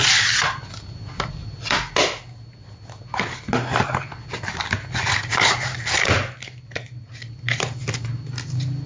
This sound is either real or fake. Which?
real